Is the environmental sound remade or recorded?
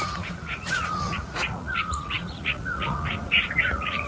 remade